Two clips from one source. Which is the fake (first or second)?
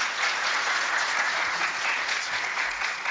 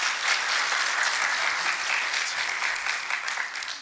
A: first